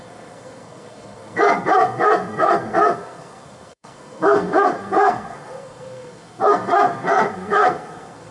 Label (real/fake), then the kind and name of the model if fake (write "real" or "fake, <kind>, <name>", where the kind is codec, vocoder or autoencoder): fake, codec, SNAC